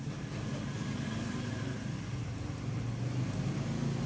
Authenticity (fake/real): real